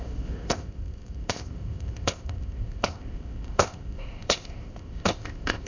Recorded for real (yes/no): no